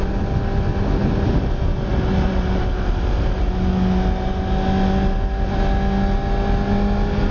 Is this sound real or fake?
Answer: real